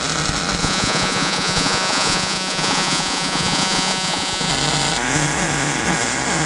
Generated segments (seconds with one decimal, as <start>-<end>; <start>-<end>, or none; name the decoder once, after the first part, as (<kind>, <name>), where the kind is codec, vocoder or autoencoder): 0.6-4.5 (vocoder, Vocos)